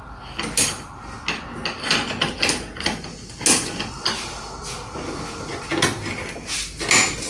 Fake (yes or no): no